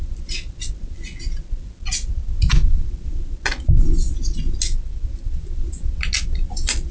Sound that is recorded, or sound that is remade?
recorded